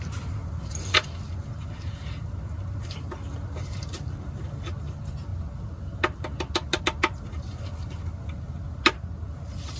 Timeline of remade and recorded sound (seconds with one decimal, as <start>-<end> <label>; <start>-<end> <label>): 0.0-9.8 recorded